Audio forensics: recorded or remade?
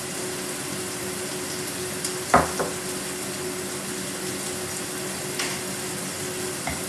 recorded